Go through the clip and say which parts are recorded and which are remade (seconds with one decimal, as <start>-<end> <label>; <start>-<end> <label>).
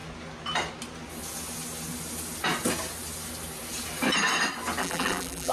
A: 0.0-4.8 recorded; 4.8-5.5 remade